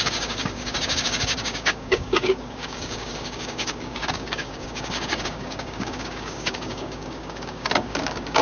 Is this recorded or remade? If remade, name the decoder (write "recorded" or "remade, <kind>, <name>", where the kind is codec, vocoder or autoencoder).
remade, codec, DAC